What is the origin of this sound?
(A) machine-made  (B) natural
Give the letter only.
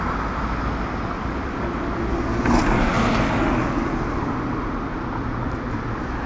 B